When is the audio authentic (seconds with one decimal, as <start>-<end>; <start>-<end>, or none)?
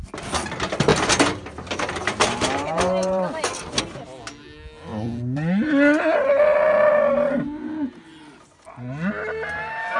0.0-0.9; 3.8-10.0